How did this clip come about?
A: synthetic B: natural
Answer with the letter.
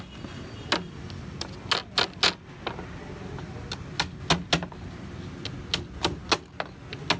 B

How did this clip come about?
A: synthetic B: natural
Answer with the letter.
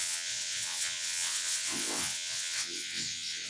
A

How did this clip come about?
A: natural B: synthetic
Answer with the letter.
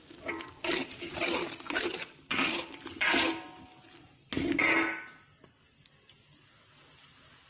A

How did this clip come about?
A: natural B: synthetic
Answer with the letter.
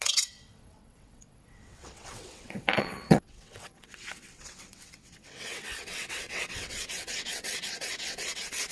B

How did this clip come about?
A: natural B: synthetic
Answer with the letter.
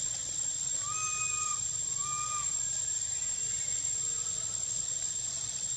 A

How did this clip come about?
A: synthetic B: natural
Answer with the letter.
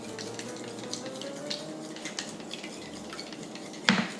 B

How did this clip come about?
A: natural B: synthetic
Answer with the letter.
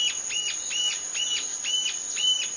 A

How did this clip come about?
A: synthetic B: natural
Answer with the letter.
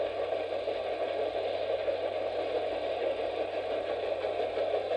B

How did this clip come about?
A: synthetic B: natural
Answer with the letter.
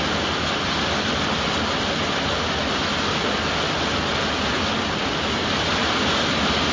B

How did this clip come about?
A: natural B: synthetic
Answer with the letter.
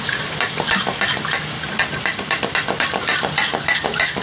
A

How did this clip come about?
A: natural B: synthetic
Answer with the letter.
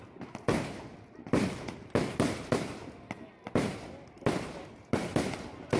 A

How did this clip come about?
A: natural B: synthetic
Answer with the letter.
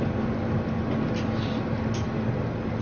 A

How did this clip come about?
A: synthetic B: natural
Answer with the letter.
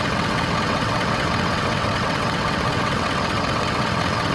A